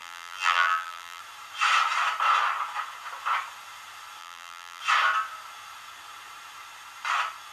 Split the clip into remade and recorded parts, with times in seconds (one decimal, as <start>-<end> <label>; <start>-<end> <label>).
0.0-1.2 remade; 1.2-4.2 recorded; 4.2-4.8 remade; 4.8-7.5 recorded